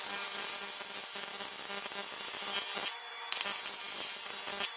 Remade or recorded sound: recorded